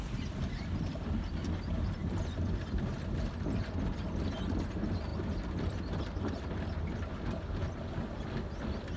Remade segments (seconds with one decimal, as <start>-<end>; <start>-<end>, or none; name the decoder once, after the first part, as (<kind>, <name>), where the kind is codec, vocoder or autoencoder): none